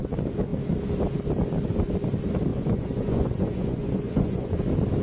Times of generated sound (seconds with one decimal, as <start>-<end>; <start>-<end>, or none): 2.5-4.6